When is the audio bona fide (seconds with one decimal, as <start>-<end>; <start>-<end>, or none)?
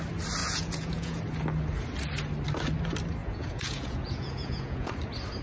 0.0-0.4; 1.2-3.2; 4.9-5.4